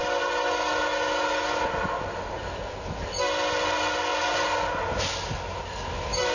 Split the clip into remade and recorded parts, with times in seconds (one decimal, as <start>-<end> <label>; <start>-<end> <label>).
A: 0.0-6.3 recorded